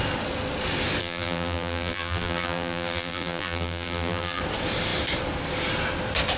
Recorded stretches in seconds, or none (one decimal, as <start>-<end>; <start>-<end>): 0.0-1.0; 4.4-6.4